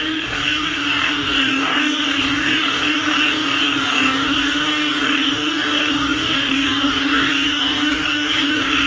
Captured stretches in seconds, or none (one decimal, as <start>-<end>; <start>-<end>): none